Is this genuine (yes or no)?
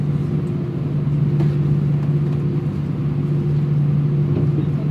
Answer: yes